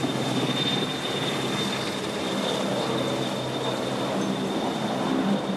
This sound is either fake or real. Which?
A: real